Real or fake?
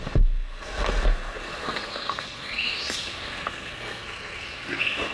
fake